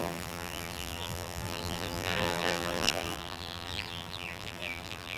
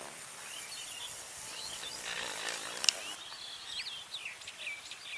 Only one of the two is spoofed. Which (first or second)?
first